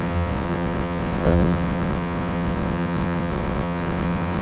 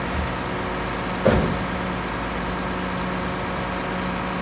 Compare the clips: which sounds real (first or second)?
second